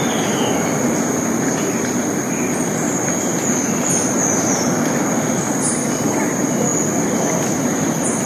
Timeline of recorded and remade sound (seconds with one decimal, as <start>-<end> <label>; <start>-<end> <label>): 0.0-8.3 recorded